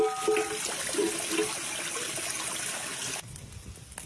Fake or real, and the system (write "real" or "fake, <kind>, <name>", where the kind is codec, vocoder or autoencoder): real